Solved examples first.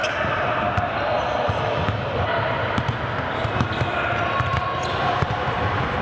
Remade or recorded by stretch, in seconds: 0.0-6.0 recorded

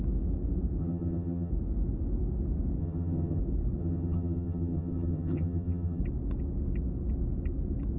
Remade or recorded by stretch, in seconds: 0.0-0.8 recorded; 0.8-1.5 remade; 1.5-2.8 recorded; 2.8-3.4 remade; 3.4-3.8 recorded; 3.8-6.0 remade; 6.0-8.0 recorded

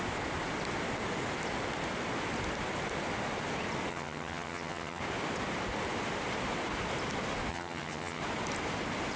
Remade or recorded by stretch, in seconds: 0.0-3.9 recorded; 3.9-5.0 remade; 5.0-7.5 recorded; 7.5-8.2 remade; 8.2-9.2 recorded

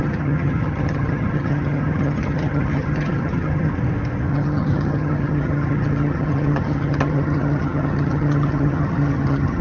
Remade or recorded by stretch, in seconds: 0.0-3.7 remade; 3.7-4.3 recorded; 4.3-9.6 remade

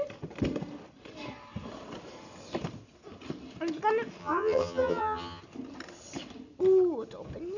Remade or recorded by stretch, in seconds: 0.0-4.2 recorded; 4.2-5.4 remade; 5.4-7.6 recorded

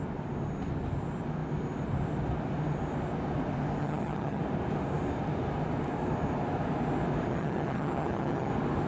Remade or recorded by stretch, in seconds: 0.0-3.8 recorded; 3.8-4.4 remade; 4.4-7.3 recorded; 7.3-8.5 remade; 8.5-8.9 recorded

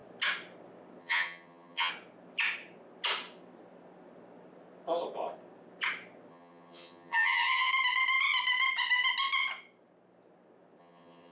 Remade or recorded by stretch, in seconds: 0.0-1.0 recorded; 1.0-1.9 remade; 1.9-6.3 recorded; 6.3-7.7 remade; 7.7-10.8 recorded; 10.8-11.3 remade

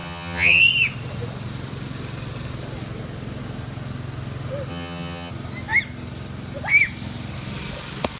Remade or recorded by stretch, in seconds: 0.0-0.6 remade; 0.6-4.7 recorded; 4.7-5.3 remade; 5.3-8.2 recorded